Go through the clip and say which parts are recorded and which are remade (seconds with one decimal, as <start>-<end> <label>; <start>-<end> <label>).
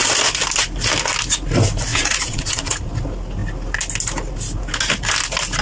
0.0-1.9 recorded; 1.9-2.9 remade; 2.9-5.6 recorded